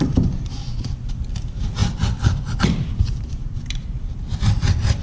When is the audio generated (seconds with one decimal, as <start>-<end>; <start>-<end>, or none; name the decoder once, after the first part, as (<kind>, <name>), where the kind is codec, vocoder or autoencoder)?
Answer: 0.0-0.6 (vocoder, BigVGAN v2); 1.1-5.0